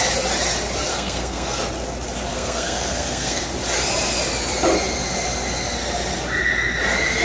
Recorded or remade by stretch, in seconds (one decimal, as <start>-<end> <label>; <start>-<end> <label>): 0.0-0.9 recorded; 0.9-1.6 remade; 1.6-2.3 recorded; 2.3-3.4 remade; 3.4-7.2 recorded